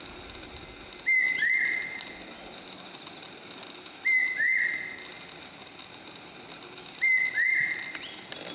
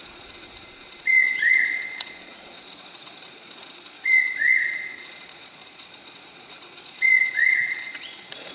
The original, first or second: first